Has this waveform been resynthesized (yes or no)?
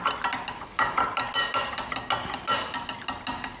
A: no